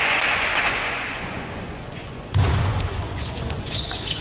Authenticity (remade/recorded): remade